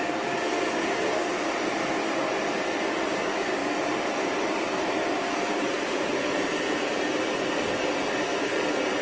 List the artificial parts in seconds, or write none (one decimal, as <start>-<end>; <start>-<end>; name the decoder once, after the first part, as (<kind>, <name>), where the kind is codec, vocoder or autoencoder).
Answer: 3.6-6.5 (vocoder, BigVGAN v2)